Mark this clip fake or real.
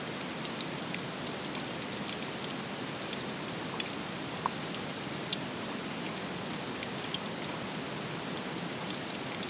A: real